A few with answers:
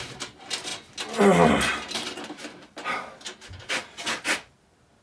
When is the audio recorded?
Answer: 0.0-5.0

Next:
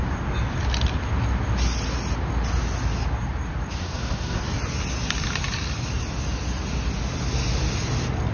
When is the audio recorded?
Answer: 0.0-3.8; 4.4-8.3

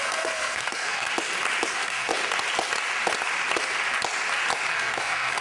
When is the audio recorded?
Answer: 1.1-1.7; 2.1-4.7

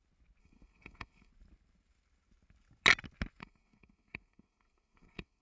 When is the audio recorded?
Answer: 0.0-0.4; 1.3-3.4

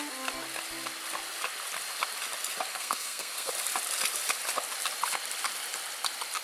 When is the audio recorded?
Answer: 0.0-2.7; 3.5-6.4

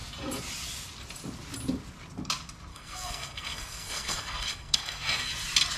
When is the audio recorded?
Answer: 0.0-2.7; 5.3-5.8

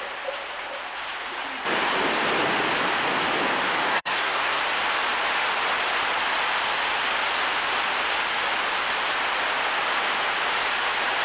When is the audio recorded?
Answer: 0.0-3.9; 4.6-11.2